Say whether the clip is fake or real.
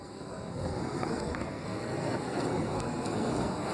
fake